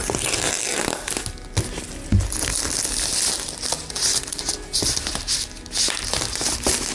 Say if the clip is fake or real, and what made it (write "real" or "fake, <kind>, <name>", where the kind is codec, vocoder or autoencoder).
real